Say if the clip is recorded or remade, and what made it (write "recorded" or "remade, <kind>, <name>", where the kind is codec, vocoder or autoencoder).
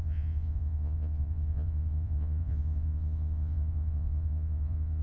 remade, vocoder, Vocos